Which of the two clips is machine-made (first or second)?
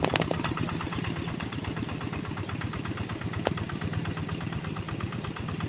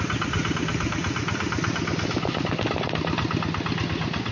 first